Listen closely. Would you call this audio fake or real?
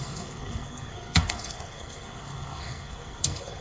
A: fake